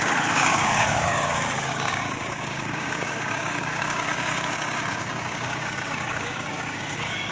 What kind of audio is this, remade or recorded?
remade